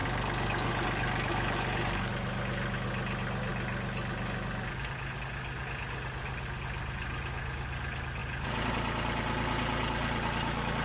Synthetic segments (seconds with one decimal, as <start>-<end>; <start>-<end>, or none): 0.0-2.1